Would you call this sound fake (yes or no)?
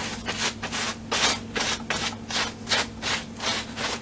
no